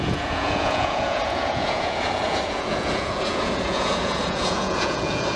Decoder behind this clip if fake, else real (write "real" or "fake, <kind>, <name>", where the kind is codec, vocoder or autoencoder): fake, vocoder, Vocos